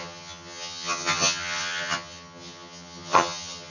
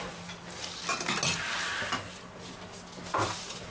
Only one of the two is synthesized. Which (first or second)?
first